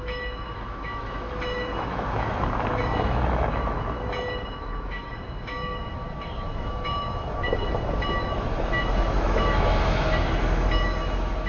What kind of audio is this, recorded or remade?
remade